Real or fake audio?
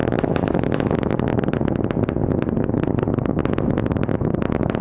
real